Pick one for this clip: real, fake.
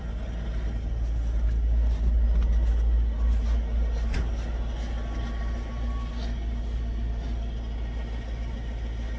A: real